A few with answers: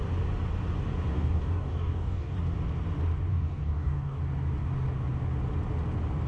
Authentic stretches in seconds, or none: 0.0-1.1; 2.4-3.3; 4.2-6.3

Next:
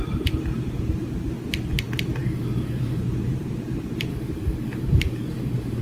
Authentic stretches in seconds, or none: 0.0-2.2; 3.0-4.1

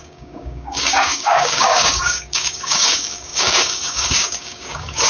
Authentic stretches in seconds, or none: none

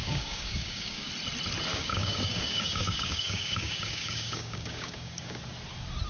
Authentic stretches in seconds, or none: 1.1-1.7; 5.4-6.1

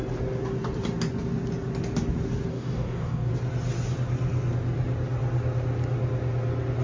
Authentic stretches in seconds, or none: 0.0-2.5; 3.3-6.8

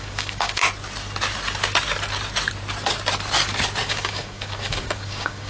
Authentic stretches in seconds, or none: 0.6-3.9

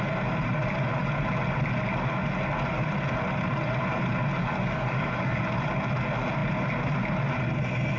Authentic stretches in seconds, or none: 0.0-4.4; 5.4-8.0

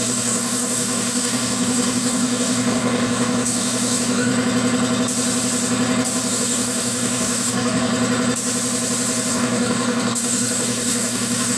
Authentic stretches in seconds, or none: 4.3-6.3; 7.9-9.3